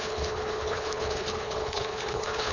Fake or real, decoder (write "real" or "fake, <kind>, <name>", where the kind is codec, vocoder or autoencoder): fake, codec, HILCodec